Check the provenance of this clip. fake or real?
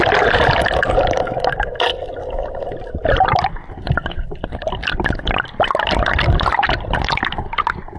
real